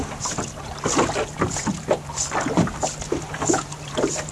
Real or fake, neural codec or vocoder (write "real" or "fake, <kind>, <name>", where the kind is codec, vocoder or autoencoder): real